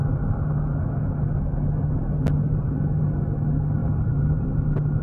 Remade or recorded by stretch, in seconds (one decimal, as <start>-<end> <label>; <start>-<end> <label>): 0.0-3.8 recorded; 3.8-4.6 remade; 4.6-5.0 recorded